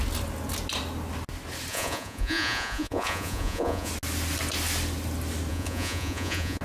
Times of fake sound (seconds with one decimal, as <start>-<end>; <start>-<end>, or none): 1.7-3.9; 5.5-6.6